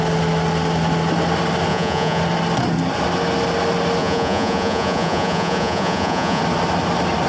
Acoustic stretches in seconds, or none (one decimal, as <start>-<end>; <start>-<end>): 0.0-1.7; 2.2-4.0; 6.4-7.3